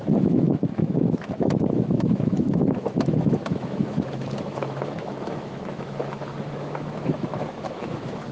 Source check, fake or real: fake